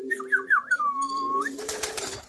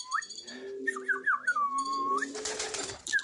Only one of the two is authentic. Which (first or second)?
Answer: second